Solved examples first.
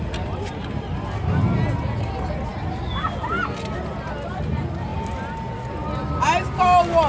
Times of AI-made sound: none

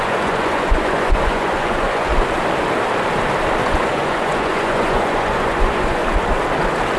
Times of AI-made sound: 0.0-2.1 (vocoder, Vocos); 3.6-6.0